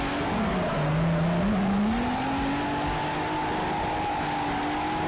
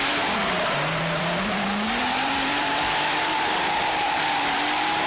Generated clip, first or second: second